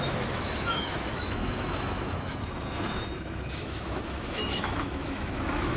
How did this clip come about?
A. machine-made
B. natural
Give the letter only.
A